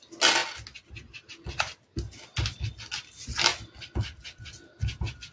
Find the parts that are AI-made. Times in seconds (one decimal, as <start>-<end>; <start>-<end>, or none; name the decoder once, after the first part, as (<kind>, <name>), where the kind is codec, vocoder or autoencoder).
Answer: none